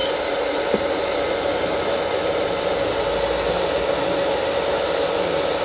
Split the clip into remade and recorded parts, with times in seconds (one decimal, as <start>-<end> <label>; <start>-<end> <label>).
0.0-1.7 remade; 1.7-5.6 recorded

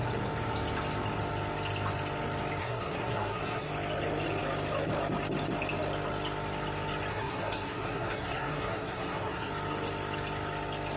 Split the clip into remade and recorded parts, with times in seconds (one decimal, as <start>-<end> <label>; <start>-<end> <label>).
0.0-2.6 recorded; 2.6-3.7 remade; 3.7-7.1 recorded; 7.1-9.5 remade; 9.5-11.0 recorded

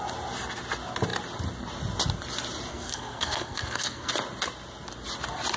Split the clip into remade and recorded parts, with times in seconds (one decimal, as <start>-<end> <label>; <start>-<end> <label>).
0.0-2.7 recorded; 2.7-4.1 remade; 4.1-5.6 recorded

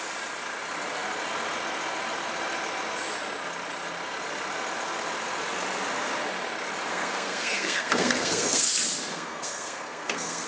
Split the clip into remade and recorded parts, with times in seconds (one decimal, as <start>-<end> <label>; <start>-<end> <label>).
0.0-6.9 recorded; 6.9-8.7 remade; 8.7-9.1 recorded; 9.1-10.5 remade

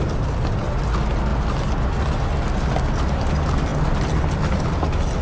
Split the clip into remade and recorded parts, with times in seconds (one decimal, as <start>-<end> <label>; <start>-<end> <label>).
0.0-5.2 recorded